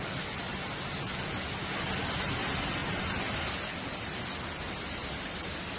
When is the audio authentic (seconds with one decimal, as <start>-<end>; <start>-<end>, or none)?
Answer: 0.0-5.8